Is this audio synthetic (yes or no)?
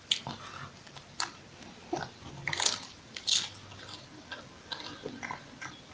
no